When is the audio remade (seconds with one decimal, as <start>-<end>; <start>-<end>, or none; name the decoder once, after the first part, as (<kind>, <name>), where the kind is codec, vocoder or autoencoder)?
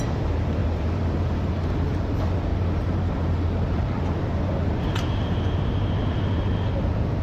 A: 0.6-1.7 (vocoder, BigVGAN v2); 2.5-5.9